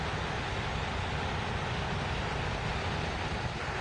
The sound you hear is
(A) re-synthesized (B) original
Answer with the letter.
B